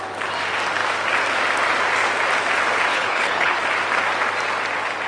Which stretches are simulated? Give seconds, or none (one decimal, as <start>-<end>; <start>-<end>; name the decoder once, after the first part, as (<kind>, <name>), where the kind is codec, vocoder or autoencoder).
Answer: 2.9-3.6 (codec, HILCodec)